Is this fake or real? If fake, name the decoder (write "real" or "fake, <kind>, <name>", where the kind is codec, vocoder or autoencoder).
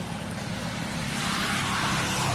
real